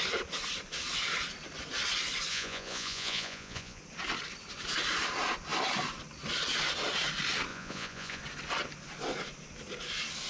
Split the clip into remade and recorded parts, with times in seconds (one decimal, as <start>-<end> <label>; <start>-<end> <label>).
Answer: 0.0-2.3 recorded; 2.3-3.8 remade; 3.8-7.5 recorded; 7.5-8.2 remade; 8.2-10.3 recorded